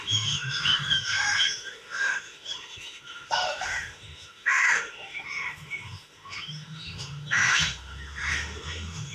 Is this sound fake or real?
fake